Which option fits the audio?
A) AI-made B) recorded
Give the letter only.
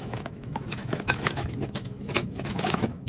A